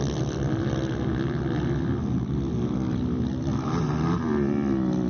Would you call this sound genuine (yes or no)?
yes